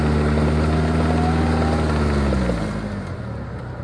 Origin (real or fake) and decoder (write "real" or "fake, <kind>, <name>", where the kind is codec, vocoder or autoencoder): real